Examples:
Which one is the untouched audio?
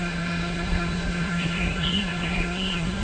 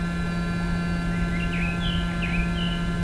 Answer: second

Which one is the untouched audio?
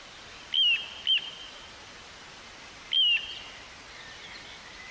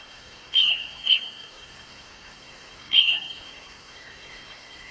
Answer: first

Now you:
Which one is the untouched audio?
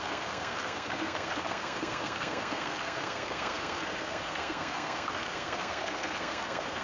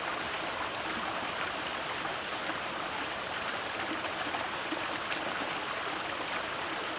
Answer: second